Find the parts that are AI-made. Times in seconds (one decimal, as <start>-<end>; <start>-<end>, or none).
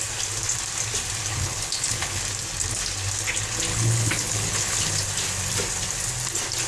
1.3-2.2; 3.7-4.9